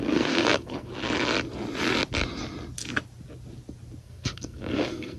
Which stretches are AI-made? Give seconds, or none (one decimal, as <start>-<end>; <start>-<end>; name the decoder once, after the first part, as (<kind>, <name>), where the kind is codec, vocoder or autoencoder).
0.0-0.9 (codec, SNAC); 4.0-5.2